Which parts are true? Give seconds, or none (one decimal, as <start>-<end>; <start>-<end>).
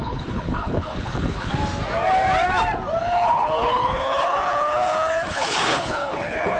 1.5-3.0